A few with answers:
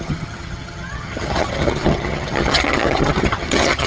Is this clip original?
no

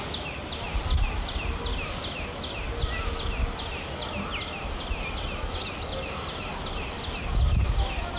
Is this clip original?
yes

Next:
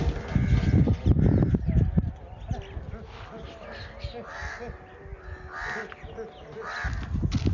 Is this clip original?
yes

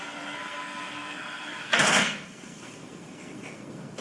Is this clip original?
no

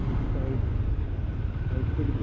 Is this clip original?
yes